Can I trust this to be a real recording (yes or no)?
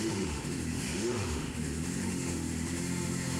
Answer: no